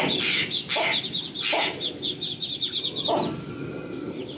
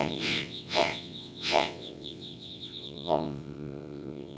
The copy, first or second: second